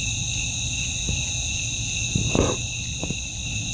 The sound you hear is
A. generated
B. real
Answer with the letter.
B